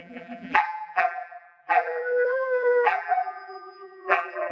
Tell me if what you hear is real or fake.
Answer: fake